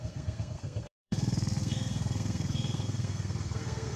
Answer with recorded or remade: remade